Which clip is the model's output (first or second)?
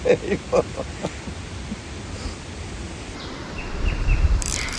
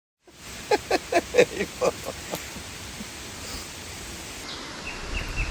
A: second